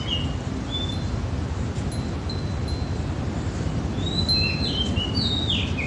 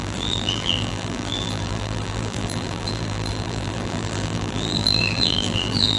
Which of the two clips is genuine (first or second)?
first